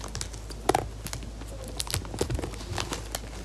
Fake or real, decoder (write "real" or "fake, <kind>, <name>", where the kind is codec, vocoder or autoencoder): real